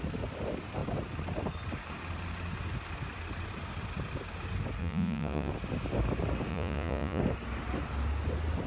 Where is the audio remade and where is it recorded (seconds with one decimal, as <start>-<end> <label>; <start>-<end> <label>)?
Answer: 0.0-4.8 recorded; 4.8-5.5 remade; 5.5-6.5 recorded; 6.5-7.2 remade; 7.2-8.7 recorded

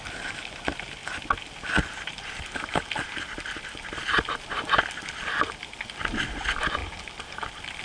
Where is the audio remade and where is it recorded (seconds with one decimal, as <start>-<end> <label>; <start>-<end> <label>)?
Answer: 0.0-7.8 recorded

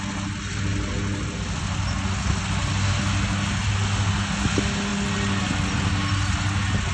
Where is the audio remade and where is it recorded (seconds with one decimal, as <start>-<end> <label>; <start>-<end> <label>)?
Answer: 0.0-6.9 recorded

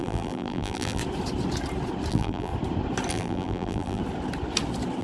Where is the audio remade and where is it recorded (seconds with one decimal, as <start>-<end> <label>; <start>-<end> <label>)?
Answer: 0.0-1.0 remade; 1.0-2.1 recorded; 2.1-2.5 remade; 2.5-3.1 recorded; 3.1-4.0 remade; 4.0-5.0 recorded

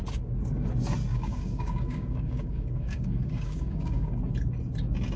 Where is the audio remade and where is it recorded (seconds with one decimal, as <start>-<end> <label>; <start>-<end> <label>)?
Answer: 0.0-1.1 recorded; 1.1-4.2 remade; 4.2-5.2 recorded